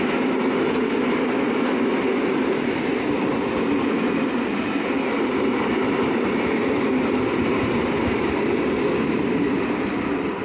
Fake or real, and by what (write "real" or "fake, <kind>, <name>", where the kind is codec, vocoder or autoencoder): real